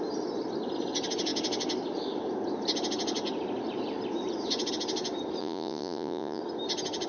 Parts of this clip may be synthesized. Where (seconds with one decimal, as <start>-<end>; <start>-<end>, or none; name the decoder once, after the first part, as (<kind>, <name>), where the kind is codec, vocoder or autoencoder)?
5.4-6.4 (vocoder, Vocos)